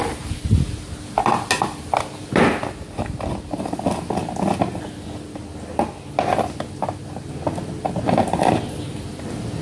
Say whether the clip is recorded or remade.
recorded